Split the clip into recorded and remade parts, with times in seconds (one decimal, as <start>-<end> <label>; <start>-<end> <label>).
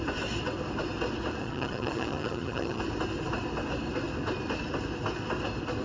0.0-1.4 recorded; 1.4-2.8 remade; 2.8-5.8 recorded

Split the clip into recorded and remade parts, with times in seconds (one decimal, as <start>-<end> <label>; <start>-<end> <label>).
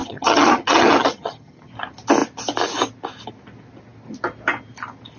0.0-1.7 remade; 1.7-5.2 recorded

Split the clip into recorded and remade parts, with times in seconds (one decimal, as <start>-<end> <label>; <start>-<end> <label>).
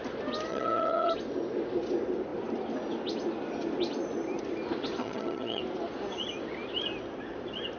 0.0-0.5 recorded; 0.5-1.1 remade; 1.1-5.0 recorded; 5.0-5.6 remade; 5.6-7.8 recorded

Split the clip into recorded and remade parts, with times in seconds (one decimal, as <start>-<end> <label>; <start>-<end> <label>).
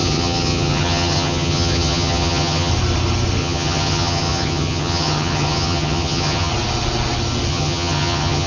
0.0-2.7 remade; 2.7-3.4 recorded; 3.4-6.5 remade; 6.5-7.5 recorded; 7.5-8.5 remade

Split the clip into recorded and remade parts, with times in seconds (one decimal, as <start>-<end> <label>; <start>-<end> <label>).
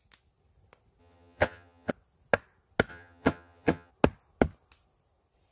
0.0-1.0 recorded; 1.0-1.9 remade; 1.9-2.9 recorded; 2.9-3.9 remade; 3.9-5.5 recorded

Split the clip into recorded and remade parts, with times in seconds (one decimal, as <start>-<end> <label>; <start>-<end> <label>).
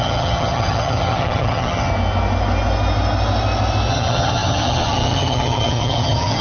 0.0-1.9 remade; 1.9-3.9 recorded; 3.9-6.4 remade